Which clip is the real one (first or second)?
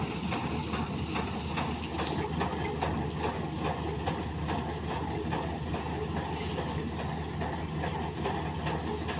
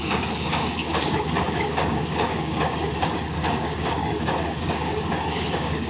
first